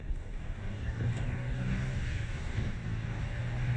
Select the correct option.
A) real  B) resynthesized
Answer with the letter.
B